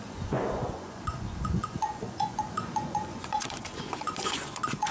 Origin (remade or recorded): remade